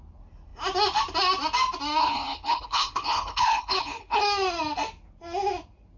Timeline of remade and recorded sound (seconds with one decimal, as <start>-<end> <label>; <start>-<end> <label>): 0.0-2.0 recorded; 2.0-4.2 remade; 4.2-6.0 recorded